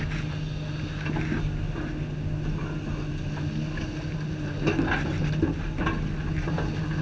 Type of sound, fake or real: real